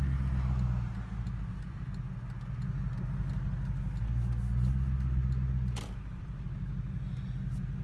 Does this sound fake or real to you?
real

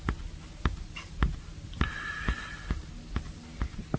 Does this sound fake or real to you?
real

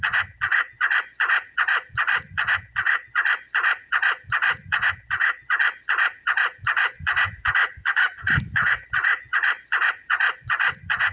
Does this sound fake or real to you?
fake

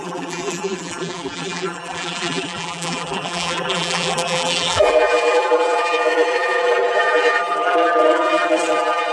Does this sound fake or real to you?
fake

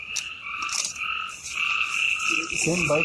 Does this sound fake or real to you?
real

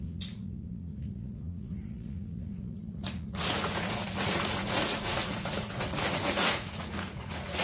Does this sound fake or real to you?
fake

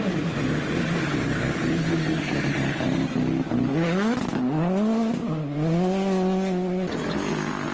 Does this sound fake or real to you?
real